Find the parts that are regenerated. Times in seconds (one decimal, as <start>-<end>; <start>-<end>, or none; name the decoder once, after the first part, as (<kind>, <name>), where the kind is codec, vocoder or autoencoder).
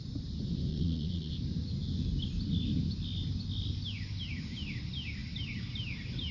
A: 0.7-1.3 (vocoder, Vocos)